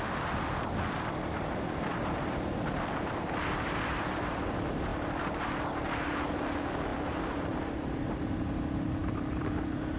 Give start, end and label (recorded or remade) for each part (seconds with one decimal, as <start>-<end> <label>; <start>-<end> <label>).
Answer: 0.0-1.9 recorded; 1.9-4.4 remade; 4.4-6.9 recorded; 6.9-7.6 remade; 7.6-9.0 recorded; 9.0-10.0 remade